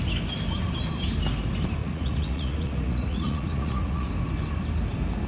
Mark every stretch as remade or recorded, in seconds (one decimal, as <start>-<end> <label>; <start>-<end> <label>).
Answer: 0.0-1.8 recorded; 1.8-4.1 remade; 4.1-5.3 recorded